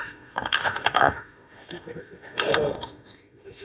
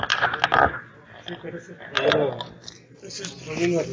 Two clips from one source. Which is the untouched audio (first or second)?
second